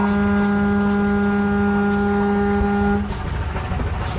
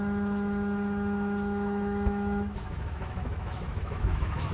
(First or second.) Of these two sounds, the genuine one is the first